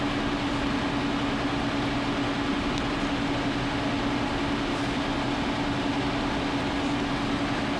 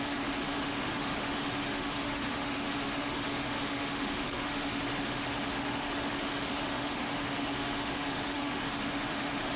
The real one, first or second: first